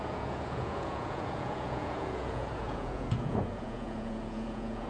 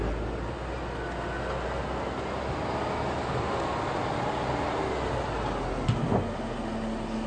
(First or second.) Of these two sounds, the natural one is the second